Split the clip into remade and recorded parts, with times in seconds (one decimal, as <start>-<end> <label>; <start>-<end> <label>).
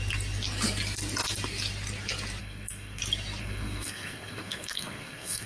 0.0-2.4 recorded; 2.4-3.0 remade; 3.0-3.4 recorded; 3.4-5.5 remade